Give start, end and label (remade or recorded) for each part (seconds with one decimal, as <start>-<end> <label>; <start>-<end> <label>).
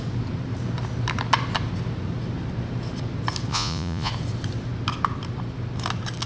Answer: 0.0-3.5 recorded; 3.5-4.1 remade; 4.1-6.3 recorded